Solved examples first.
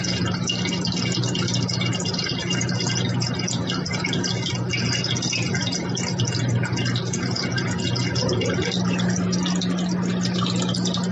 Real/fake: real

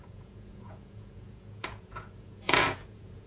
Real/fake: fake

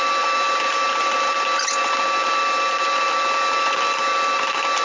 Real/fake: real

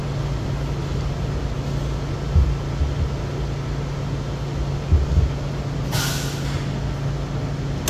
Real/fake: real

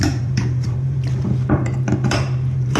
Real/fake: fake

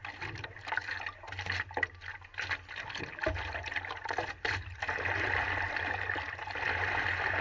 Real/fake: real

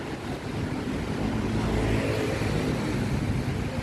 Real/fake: real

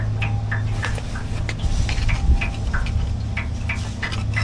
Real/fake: real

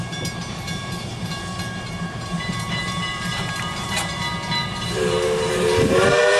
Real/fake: fake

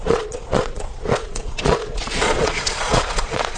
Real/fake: fake